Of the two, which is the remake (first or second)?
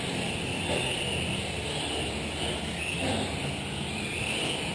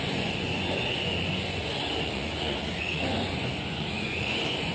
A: second